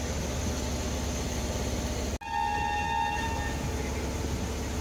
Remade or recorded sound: recorded